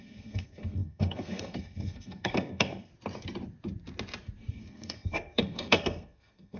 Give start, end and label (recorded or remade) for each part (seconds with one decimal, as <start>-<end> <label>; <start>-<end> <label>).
0.0-2.9 remade; 2.9-4.5 recorded; 4.5-6.6 remade